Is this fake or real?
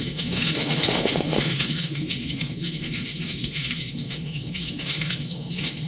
fake